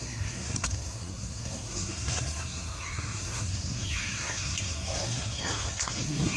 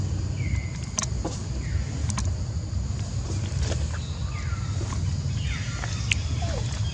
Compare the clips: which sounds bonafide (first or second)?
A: second